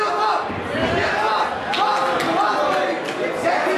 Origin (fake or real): real